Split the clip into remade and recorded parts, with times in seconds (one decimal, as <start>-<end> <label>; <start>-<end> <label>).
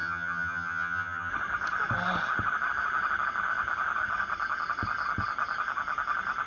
0.0-1.3 remade; 1.3-6.5 recorded